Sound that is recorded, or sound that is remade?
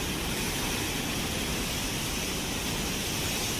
recorded